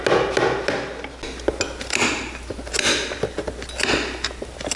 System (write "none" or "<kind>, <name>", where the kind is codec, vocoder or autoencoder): none